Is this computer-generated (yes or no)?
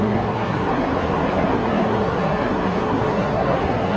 yes